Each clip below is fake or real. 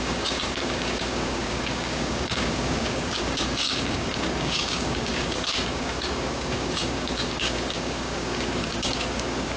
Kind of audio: fake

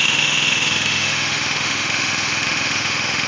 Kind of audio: fake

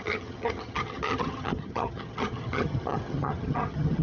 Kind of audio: fake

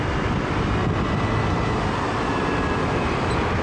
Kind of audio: real